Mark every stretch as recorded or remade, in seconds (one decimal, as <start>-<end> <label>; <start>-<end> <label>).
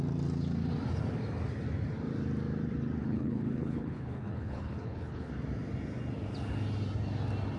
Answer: 0.0-3.0 recorded; 3.0-5.3 remade; 5.3-7.6 recorded